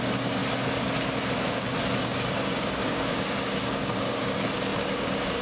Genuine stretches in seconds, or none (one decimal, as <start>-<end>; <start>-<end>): 0.4-2.0